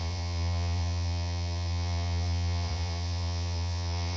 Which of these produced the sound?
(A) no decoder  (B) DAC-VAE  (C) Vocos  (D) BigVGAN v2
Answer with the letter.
C